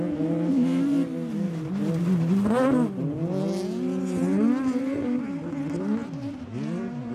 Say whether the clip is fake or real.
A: real